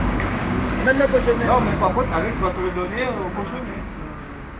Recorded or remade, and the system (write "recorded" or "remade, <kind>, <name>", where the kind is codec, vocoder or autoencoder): remade, codec, DAC